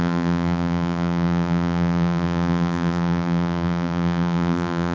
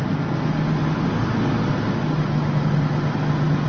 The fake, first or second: first